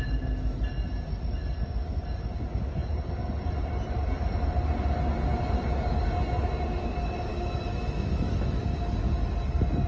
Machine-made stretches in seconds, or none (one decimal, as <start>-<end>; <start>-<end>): 7.3-8.6